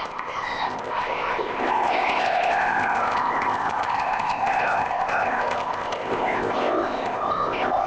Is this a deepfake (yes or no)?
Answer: yes